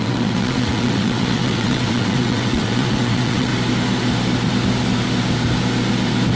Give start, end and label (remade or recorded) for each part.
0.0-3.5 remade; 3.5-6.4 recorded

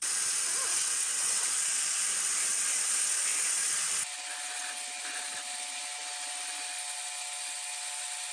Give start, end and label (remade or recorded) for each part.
0.0-0.7 recorded; 0.7-1.5 remade; 1.5-8.3 recorded

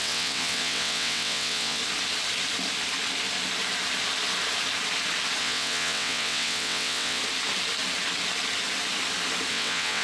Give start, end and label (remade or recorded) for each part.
0.0-1.8 remade; 1.8-5.4 recorded; 5.4-7.2 remade; 7.2-9.5 recorded; 9.5-10.0 remade

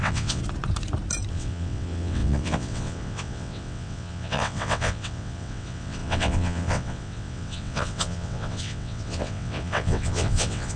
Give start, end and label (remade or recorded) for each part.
0.0-0.4 remade; 0.4-1.3 recorded; 1.3-10.8 remade

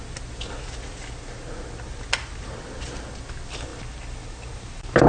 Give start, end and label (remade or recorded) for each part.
0.0-5.1 recorded

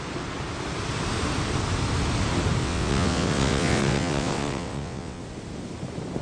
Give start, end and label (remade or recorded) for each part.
0.0-2.6 recorded; 2.6-5.2 remade; 5.2-6.2 recorded

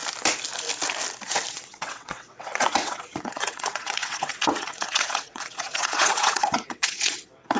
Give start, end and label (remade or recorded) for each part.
0.0-1.5 recorded; 1.5-7.6 remade